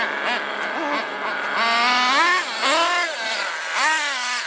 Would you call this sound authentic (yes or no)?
yes